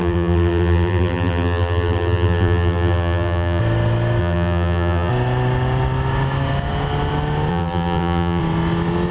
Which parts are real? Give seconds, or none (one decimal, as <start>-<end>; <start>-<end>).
3.6-4.2; 5.1-7.5; 8.4-9.1